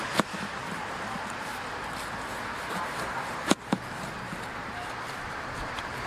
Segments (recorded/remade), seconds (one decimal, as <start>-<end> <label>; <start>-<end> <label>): 0.0-0.5 recorded; 0.5-1.8 remade; 1.8-2.3 recorded; 2.3-5.2 remade; 5.2-6.1 recorded

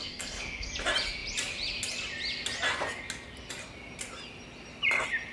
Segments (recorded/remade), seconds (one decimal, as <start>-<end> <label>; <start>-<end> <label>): 0.0-0.7 remade; 0.7-5.3 recorded

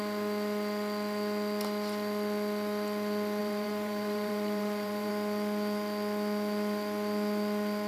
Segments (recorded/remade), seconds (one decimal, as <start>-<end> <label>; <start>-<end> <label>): 0.0-3.4 recorded; 3.4-5.1 remade; 5.1-7.9 recorded

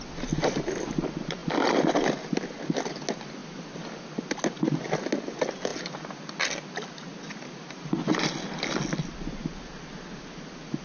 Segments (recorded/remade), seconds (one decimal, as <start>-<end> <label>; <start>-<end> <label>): 0.0-10.8 recorded

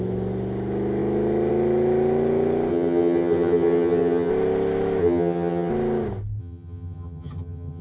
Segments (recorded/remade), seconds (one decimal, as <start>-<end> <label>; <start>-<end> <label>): 0.0-2.7 recorded; 2.7-4.3 remade; 4.3-5.0 recorded; 5.0-5.7 remade; 5.7-6.4 recorded; 6.4-7.8 remade

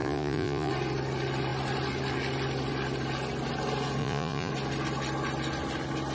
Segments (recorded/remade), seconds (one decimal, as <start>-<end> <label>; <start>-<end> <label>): 0.0-0.7 remade; 0.7-4.0 recorded; 4.0-4.5 remade; 4.5-6.1 recorded

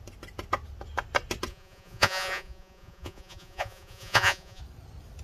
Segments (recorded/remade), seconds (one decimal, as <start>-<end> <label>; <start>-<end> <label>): 0.0-1.5 recorded; 1.5-4.6 remade; 4.6-5.2 recorded